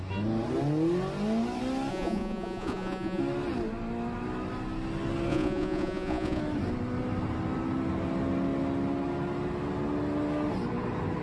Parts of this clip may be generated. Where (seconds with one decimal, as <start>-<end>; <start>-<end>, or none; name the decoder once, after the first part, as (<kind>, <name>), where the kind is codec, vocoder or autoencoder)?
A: 1.9-3.2 (vocoder, Vocos); 5.3-6.4